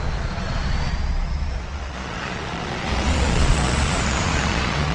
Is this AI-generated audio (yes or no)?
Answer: yes